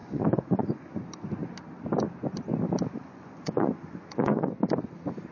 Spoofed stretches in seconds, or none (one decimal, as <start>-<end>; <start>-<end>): 0.0-1.0; 3.0-4.5